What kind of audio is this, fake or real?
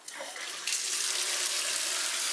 real